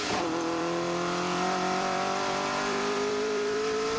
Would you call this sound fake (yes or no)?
yes